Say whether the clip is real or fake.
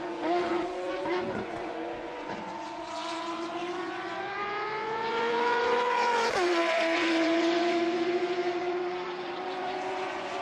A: fake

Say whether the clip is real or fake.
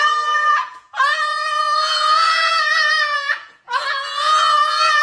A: fake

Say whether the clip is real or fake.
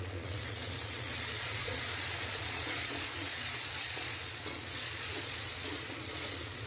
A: fake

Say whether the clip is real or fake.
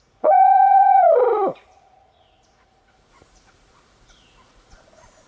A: fake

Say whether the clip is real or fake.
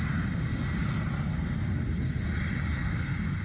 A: real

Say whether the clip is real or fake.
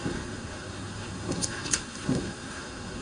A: fake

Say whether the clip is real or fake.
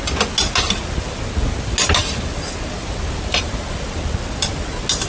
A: real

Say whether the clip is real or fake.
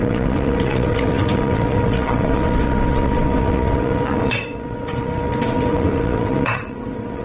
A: fake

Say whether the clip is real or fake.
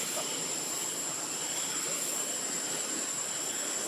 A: real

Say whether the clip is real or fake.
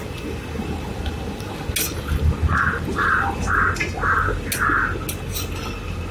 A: real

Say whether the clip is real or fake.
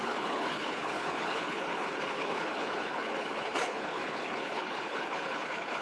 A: fake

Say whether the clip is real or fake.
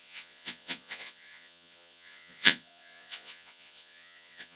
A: fake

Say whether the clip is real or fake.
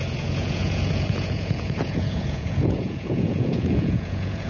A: fake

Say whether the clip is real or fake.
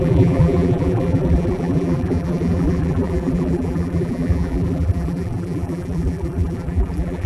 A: fake